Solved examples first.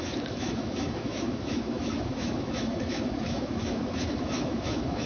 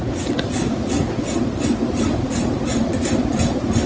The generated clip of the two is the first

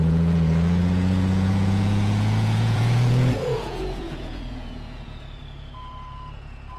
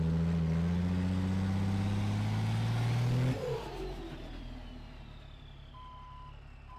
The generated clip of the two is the first